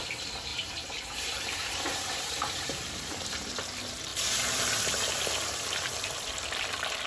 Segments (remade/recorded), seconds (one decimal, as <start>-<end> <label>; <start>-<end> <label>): 0.0-0.5 recorded; 0.5-3.5 remade; 3.5-7.1 recorded